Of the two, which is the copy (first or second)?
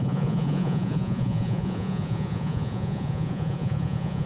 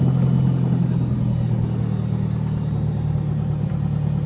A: first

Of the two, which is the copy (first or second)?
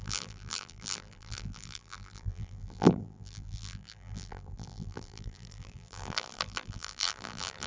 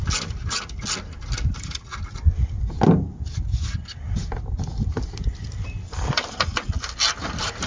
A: first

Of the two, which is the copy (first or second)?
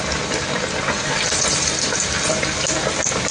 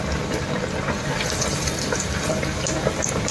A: second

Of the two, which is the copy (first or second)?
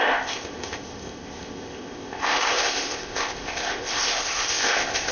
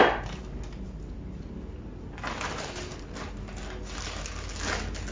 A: first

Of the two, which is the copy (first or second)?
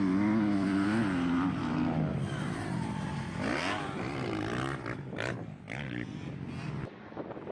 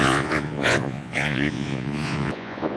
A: second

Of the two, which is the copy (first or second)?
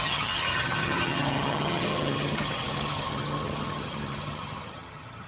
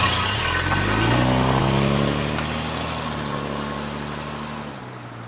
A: first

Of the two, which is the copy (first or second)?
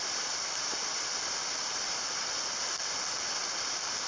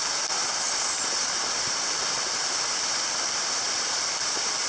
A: second